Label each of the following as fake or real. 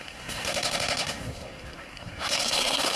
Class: fake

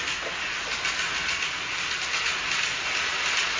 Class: real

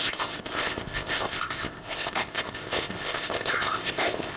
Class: fake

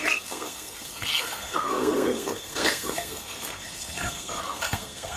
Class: fake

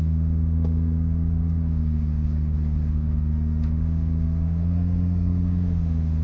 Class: fake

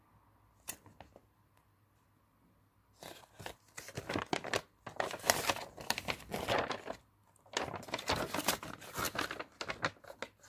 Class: real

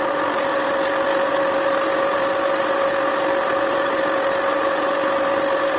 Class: real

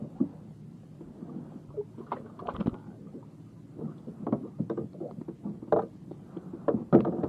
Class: real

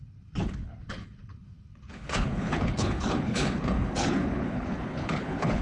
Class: fake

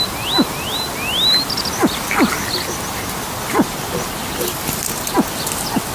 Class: real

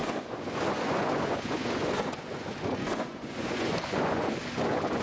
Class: fake